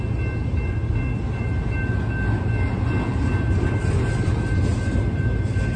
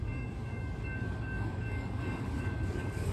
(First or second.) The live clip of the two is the first